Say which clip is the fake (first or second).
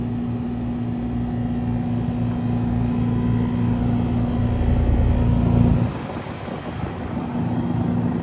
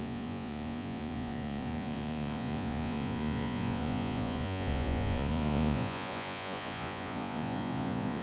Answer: second